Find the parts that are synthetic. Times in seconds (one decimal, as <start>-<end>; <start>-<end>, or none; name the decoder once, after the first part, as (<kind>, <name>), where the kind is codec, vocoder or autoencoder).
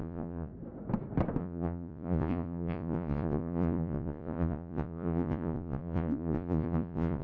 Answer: 0.0-0.5 (vocoder, Vocos); 1.4-7.2